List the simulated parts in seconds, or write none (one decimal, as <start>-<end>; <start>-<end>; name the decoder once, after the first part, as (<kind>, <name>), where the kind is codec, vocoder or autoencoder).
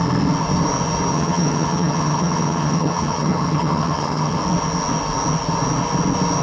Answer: 1.1-4.4 (vocoder, HiFi-GAN)